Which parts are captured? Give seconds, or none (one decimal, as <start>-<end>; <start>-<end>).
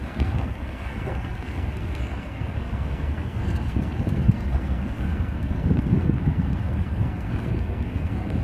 none